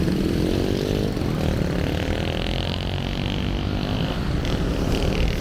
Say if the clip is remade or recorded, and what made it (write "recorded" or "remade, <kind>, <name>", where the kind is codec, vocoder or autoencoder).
recorded